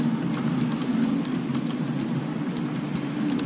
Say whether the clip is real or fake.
real